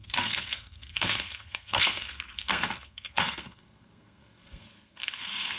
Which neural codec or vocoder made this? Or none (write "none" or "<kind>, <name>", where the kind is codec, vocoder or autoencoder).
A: codec, SNAC